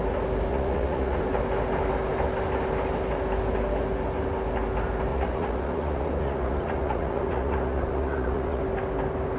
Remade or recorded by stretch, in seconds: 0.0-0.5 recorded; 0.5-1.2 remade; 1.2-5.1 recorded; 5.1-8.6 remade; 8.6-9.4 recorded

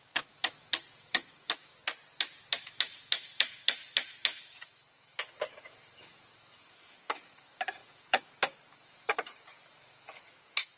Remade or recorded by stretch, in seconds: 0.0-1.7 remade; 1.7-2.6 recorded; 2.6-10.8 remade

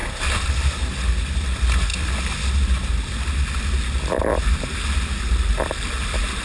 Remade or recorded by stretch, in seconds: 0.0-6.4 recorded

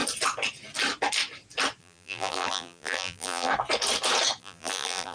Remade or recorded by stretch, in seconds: 0.0-1.8 recorded; 1.8-3.5 remade; 3.5-4.4 recorded; 4.4-5.1 remade

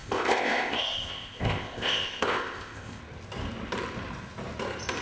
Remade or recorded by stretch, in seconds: 0.0-3.0 remade; 3.0-5.0 recorded

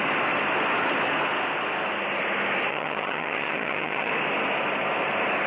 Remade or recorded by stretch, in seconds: 0.0-2.7 recorded; 2.7-4.1 remade; 4.1-5.5 recorded

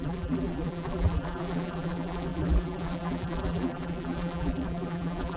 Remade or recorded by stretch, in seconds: 0.0-5.4 remade

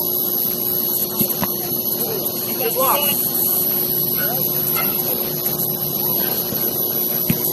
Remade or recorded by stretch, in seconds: 0.0-1.0 recorded; 1.0-3.8 remade; 3.8-7.5 recorded